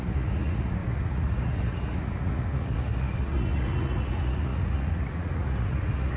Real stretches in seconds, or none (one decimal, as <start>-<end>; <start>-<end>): none